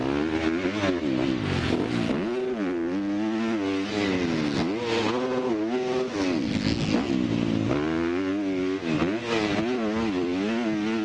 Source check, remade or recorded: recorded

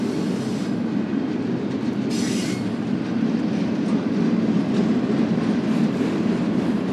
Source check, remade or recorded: recorded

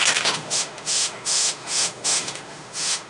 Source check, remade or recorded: remade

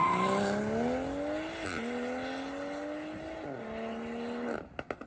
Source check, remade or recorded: recorded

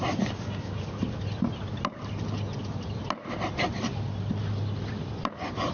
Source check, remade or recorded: recorded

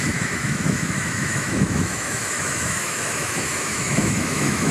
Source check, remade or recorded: remade